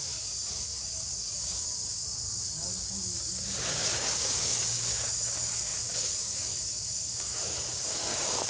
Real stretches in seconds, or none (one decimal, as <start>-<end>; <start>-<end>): none